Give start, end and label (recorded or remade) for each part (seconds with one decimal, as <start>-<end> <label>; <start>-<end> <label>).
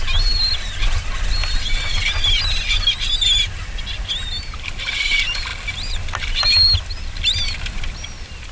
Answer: 0.0-8.5 recorded